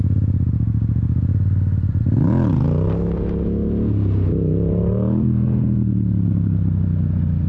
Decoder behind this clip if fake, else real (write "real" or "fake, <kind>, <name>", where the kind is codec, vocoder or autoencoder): real